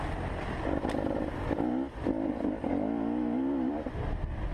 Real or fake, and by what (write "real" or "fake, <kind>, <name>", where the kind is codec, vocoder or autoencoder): real